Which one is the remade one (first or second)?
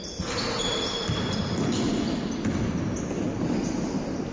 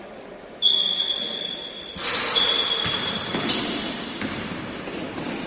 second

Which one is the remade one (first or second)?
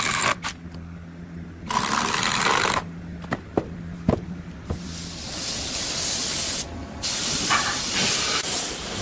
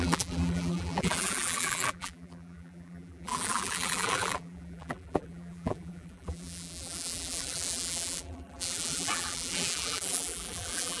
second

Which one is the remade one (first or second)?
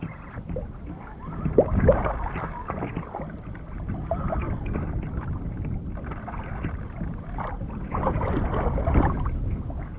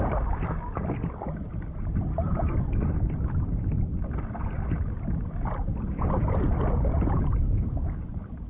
second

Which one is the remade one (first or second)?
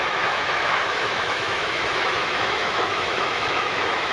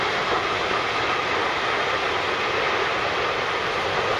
first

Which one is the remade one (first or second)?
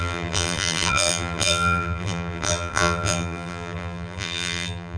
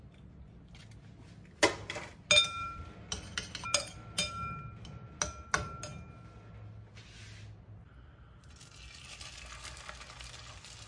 first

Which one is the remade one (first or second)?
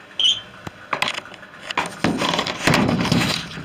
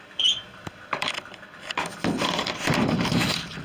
second